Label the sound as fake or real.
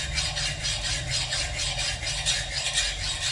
real